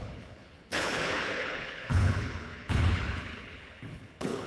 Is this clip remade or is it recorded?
remade